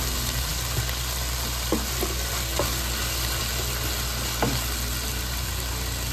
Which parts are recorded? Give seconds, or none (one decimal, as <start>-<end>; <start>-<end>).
0.0-6.1